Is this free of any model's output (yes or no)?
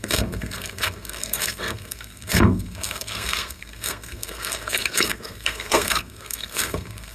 no